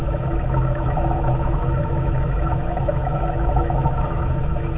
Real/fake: fake